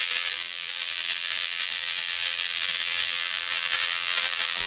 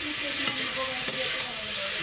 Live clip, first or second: second